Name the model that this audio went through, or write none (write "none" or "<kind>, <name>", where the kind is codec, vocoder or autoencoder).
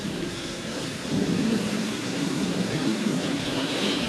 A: codec, SNAC